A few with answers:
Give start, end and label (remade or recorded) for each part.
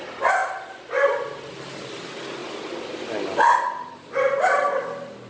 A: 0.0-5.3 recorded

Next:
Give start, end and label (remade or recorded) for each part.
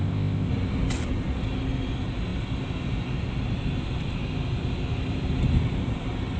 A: 0.0-0.5 remade; 0.5-6.4 recorded